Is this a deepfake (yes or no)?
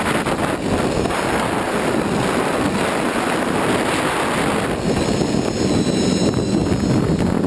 no